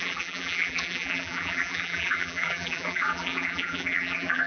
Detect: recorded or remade remade